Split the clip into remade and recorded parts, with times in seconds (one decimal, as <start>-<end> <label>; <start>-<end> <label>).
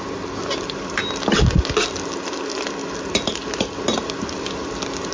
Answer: 0.0-5.1 recorded